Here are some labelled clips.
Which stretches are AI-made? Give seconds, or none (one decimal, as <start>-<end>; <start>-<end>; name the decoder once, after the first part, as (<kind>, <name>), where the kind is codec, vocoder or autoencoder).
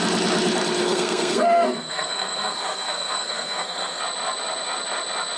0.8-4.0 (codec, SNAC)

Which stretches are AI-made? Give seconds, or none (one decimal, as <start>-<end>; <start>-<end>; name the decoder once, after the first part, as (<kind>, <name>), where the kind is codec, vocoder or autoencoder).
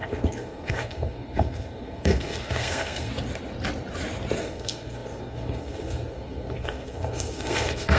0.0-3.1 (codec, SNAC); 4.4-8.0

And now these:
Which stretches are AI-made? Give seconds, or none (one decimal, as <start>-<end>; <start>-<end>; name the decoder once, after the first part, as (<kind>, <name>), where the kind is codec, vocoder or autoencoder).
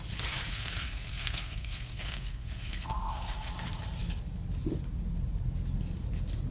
0.5-3.5 (codec, SNAC)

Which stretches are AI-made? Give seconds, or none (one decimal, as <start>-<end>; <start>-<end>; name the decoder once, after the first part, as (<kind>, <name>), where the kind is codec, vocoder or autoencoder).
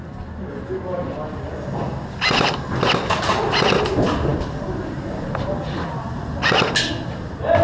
none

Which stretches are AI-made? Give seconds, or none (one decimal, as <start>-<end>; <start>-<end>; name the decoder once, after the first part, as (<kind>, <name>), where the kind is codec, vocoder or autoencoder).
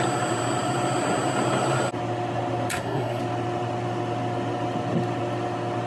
2.7-3.2 (codec, SNAC)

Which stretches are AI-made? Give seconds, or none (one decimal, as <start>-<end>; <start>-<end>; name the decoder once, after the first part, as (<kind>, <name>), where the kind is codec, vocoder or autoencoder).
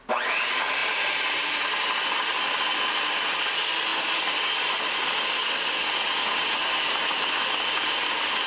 none